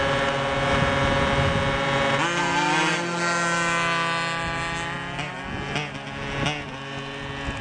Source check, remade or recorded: recorded